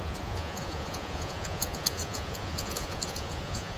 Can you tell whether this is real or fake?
fake